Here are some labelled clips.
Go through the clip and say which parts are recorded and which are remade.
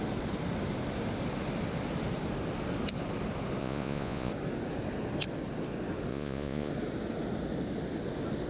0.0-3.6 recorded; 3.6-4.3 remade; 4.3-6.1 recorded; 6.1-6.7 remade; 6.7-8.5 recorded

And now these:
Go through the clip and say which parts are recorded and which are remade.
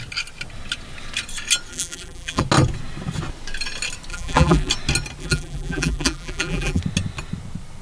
0.0-1.7 recorded; 1.7-2.4 remade; 2.4-4.1 recorded; 4.1-4.7 remade; 4.7-5.2 recorded; 5.2-6.8 remade; 6.8-7.8 recorded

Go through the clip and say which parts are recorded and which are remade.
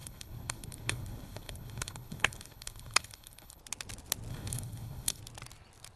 0.0-3.6 remade; 3.6-4.3 recorded; 4.3-5.2 remade; 5.2-6.0 recorded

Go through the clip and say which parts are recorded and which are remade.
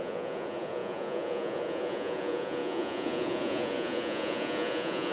0.0-5.1 remade